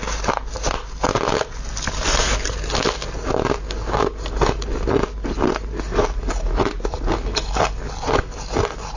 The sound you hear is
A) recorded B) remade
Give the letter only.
A